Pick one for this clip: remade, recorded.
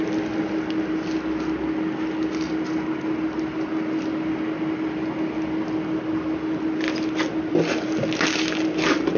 recorded